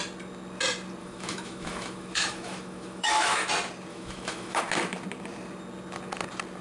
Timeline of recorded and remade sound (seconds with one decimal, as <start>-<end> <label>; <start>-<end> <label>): 0.0-1.0 recorded; 1.0-3.5 remade; 3.5-3.9 recorded; 3.9-4.6 remade; 4.6-6.6 recorded